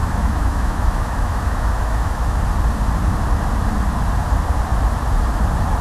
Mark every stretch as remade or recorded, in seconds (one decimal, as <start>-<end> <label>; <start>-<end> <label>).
0.0-2.4 remade; 2.4-5.8 recorded